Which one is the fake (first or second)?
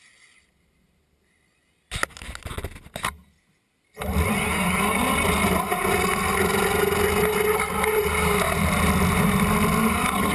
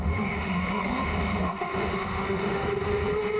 second